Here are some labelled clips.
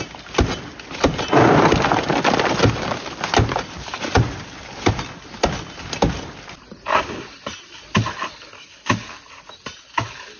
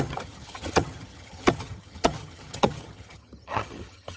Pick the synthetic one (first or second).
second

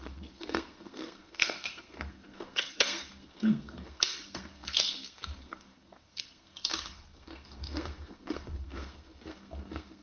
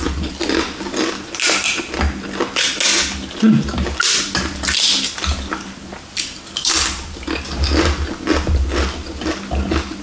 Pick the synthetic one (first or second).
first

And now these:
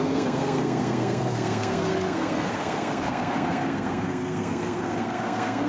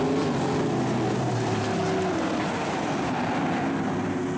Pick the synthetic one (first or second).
first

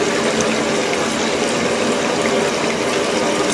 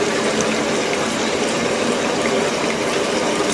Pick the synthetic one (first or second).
second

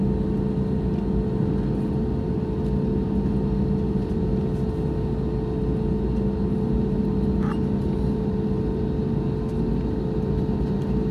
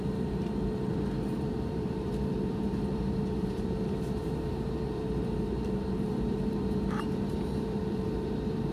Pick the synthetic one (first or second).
second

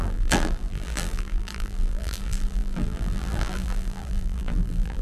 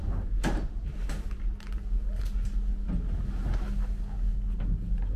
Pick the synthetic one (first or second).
first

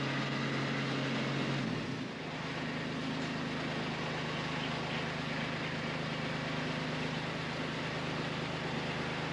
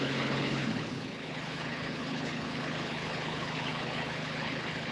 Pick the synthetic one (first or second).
second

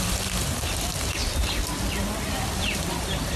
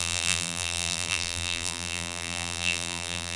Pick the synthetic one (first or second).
second